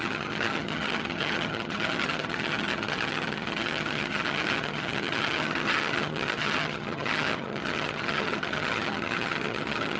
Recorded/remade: remade